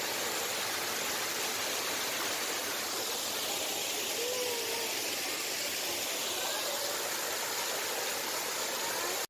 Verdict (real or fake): real